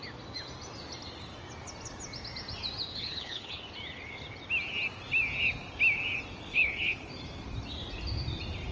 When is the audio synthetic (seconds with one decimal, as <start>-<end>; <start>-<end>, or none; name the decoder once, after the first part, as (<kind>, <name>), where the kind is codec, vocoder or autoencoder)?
2.9-3.6 (codec, HILCodec); 6.5-7.1